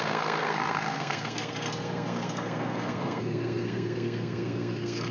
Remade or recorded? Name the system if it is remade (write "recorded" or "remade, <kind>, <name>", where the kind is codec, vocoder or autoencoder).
remade, codec, SNAC